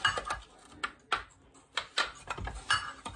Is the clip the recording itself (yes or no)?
yes